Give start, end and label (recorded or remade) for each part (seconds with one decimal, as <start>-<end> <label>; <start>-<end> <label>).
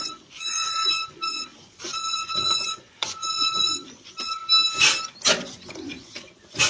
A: 0.0-4.4 remade; 4.4-5.5 recorded; 5.5-6.7 remade